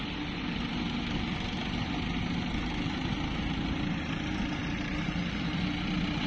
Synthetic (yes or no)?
no